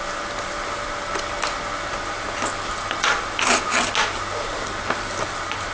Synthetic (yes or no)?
no